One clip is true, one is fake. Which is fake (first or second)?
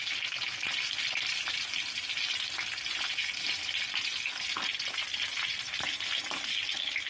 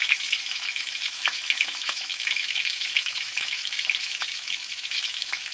second